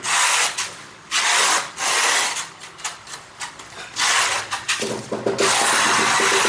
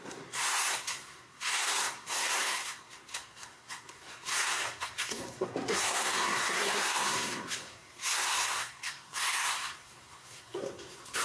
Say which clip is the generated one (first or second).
second